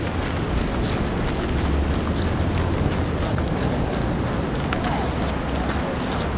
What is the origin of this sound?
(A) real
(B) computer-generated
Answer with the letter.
A